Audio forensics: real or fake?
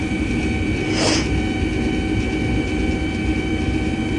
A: fake